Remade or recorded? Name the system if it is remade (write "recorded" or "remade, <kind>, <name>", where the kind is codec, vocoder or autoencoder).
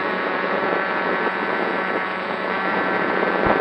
remade, vocoder, Vocos